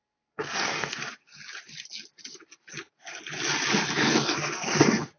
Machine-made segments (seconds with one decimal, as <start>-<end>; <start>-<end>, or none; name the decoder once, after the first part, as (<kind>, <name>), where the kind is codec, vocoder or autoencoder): 0.0-1.0 (codec, SNAC); 4.1-5.2

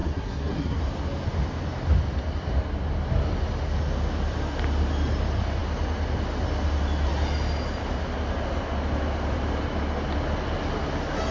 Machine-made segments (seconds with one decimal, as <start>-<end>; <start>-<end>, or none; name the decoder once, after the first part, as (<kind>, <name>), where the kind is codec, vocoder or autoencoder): 0.0-0.8 (codec, SNAC)